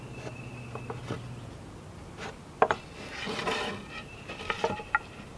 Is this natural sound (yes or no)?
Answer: yes